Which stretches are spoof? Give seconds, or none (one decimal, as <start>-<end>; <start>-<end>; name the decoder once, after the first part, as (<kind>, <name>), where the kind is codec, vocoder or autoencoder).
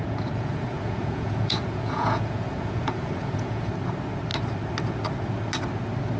0.0-3.7 (vocoder, Vocos)